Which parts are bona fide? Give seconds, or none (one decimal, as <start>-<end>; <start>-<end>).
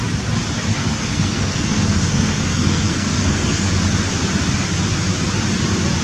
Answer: 0.0-0.8; 3.7-6.0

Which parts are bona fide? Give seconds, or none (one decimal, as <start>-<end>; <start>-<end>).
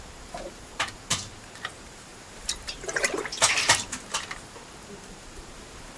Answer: none